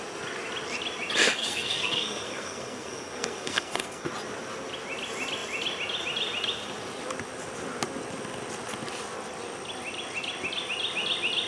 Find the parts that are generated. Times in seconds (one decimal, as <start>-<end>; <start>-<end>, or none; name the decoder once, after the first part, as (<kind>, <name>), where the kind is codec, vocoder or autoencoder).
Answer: 1.2-4.1 (codec, SNAC)